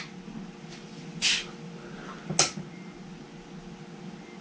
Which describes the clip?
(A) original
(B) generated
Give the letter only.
A